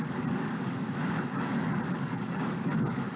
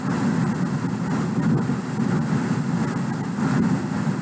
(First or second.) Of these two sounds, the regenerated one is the first